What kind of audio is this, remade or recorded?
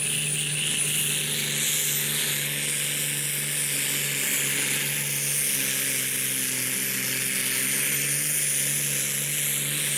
recorded